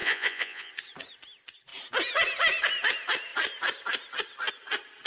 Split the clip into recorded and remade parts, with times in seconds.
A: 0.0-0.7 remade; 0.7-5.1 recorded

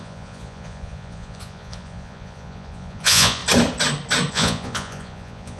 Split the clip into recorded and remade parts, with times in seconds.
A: 0.0-3.4 remade; 3.4-4.3 recorded; 4.3-5.6 remade

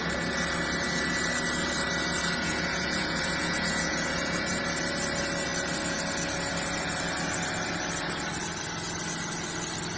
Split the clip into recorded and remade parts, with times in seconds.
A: 0.0-2.4 recorded; 2.4-4.6 remade; 4.6-10.0 recorded

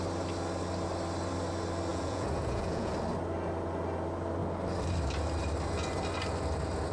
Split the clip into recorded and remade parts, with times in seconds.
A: 0.0-1.9 recorded; 1.9-2.9 remade; 2.9-6.9 recorded

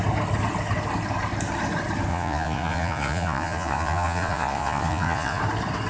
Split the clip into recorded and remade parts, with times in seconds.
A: 0.0-2.1 recorded; 2.1-5.4 remade; 5.4-5.9 recorded

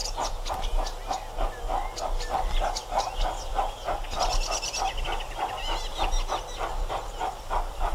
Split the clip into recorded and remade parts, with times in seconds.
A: 0.0-0.5 remade; 0.5-7.9 recorded

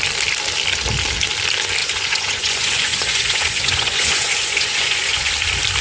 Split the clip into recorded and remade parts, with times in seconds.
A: 0.0-1.8 recorded; 1.8-5.3 remade; 5.3-5.8 recorded

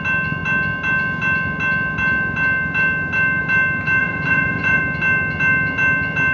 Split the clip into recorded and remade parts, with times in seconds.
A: 0.0-4.0 recorded; 4.0-4.8 remade; 4.8-6.3 recorded